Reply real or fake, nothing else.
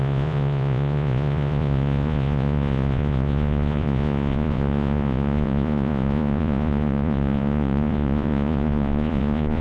fake